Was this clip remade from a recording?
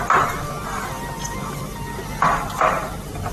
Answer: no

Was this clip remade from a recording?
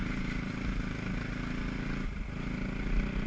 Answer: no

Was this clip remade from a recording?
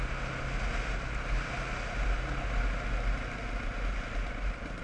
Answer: no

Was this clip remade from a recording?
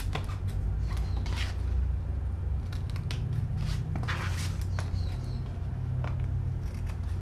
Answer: no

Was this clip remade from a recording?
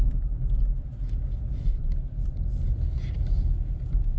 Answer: no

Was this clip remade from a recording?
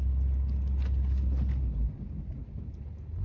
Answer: no